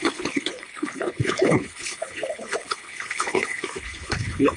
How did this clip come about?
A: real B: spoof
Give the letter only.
B